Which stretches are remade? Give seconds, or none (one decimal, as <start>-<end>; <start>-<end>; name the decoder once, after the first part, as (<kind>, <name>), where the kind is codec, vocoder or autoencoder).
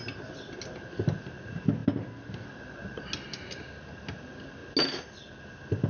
none